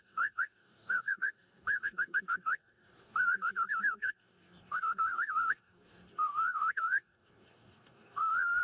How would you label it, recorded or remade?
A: remade